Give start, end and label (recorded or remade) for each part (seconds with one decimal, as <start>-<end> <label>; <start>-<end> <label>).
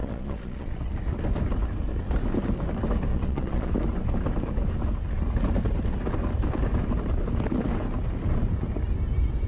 0.0-0.9 remade; 0.9-3.1 recorded; 3.1-3.7 remade; 3.7-9.5 recorded